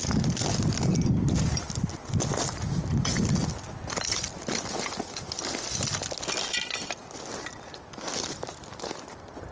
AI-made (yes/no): no